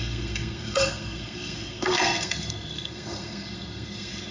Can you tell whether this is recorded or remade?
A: remade